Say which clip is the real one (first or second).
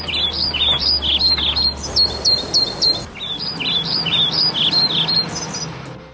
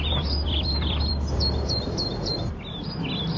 first